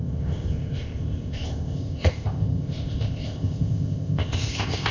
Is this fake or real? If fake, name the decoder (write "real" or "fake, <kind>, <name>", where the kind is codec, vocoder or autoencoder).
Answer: fake, codec, ZipCodec